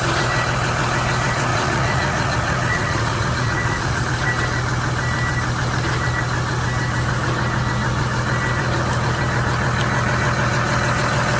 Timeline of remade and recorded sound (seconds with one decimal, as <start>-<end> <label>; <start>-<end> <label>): 0.0-1.5 recorded; 1.5-4.0 remade; 4.0-11.4 recorded

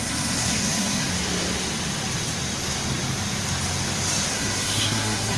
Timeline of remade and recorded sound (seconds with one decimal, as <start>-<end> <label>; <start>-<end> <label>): 0.0-1.1 remade; 1.1-4.3 recorded; 4.3-5.4 remade

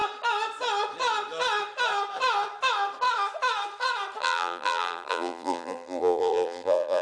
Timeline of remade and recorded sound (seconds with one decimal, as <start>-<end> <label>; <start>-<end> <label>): 0.0-4.2 recorded; 4.2-7.0 remade

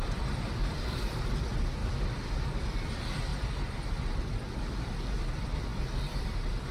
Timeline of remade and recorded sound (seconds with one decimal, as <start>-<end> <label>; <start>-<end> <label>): 0.0-0.6 recorded; 0.6-1.2 remade; 1.2-1.8 recorded; 1.8-2.3 remade; 2.3-6.7 recorded

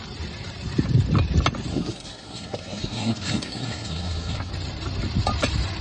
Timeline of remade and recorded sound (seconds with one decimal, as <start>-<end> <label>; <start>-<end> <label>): 0.0-1.7 recorded; 1.7-4.5 remade; 4.5-5.8 recorded

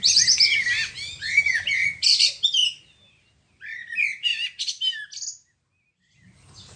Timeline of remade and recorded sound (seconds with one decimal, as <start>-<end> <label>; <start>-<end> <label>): 0.0-6.8 recorded

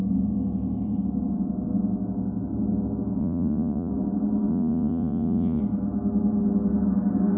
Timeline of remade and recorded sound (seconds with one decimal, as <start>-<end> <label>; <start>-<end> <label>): 0.0-3.2 recorded; 3.2-3.9 remade; 3.9-4.5 recorded; 4.5-5.6 remade; 5.6-7.4 recorded